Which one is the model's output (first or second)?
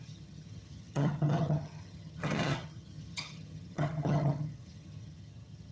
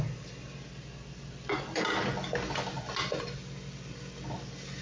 first